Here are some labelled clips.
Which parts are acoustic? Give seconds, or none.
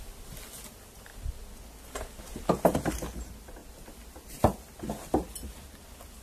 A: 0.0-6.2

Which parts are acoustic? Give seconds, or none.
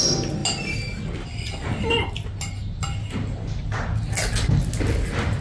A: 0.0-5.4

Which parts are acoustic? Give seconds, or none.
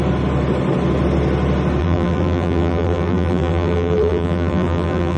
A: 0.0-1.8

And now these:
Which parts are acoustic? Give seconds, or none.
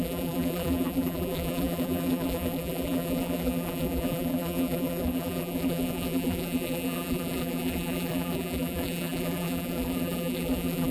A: none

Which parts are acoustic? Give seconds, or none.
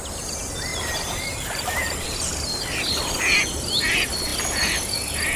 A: 0.0-0.7; 2.6-5.4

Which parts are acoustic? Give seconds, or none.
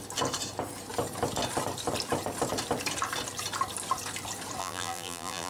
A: 0.0-4.6